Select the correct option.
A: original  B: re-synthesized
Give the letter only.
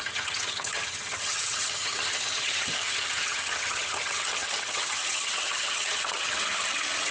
B